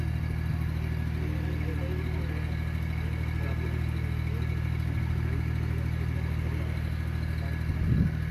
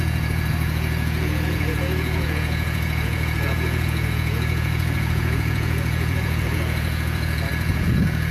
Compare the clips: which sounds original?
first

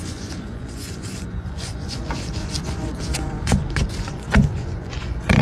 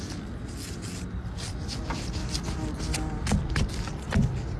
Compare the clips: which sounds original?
second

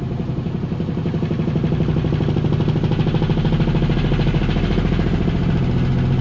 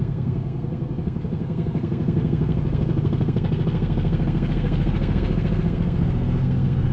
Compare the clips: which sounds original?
first